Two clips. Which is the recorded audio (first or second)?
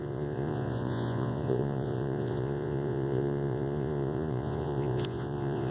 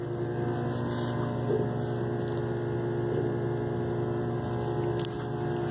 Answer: second